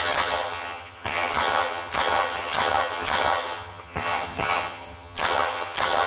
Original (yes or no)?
no